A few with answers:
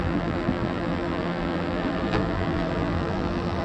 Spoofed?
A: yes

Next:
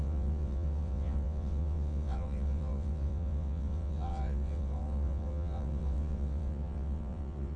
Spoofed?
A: yes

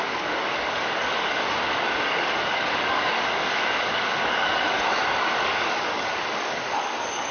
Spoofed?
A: yes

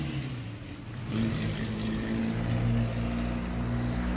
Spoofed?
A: no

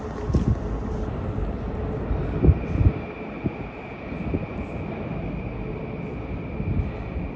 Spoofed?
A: no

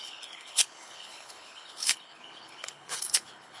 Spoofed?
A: yes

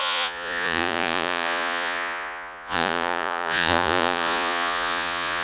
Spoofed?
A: yes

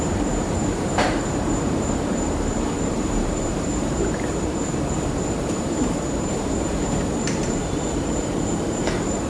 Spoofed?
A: yes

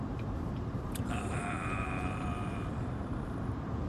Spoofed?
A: yes